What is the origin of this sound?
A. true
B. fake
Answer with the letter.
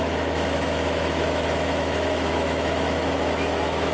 B